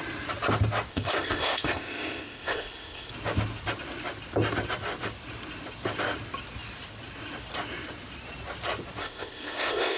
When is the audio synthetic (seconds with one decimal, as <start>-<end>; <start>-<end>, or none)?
0.9-3.1; 9.0-10.0